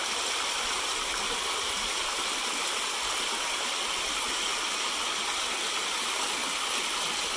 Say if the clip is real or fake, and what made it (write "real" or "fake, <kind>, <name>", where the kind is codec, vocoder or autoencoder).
real